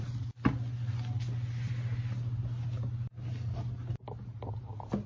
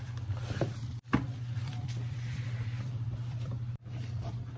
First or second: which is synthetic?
second